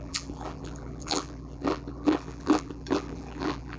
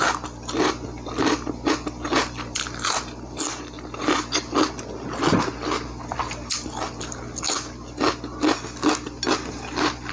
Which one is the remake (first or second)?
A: first